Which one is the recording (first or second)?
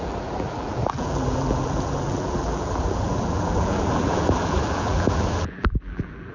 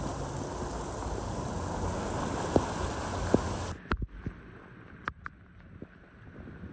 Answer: second